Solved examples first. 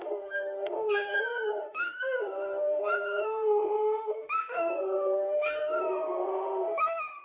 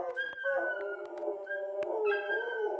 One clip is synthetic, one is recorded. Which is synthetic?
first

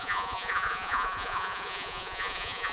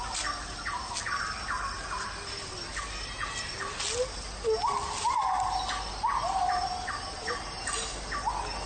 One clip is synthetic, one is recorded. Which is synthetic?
first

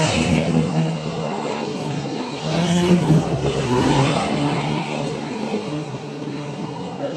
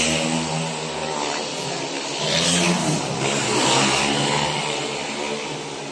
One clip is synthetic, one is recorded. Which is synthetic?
first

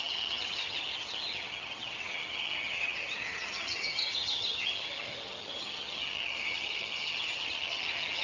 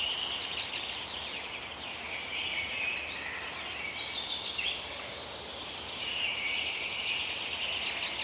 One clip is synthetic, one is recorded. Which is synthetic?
first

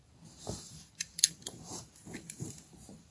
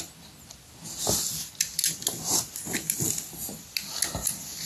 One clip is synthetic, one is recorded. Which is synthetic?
first